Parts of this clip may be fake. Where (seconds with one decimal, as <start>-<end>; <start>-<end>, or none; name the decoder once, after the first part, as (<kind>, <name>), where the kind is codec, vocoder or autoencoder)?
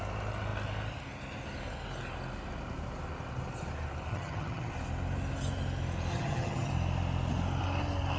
4.1-4.7 (vocoder, HiFi-GAN); 6.1-6.7